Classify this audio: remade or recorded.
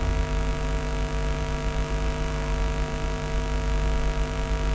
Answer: recorded